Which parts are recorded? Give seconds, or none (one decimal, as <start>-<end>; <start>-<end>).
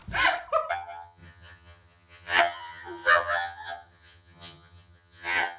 0.0-0.7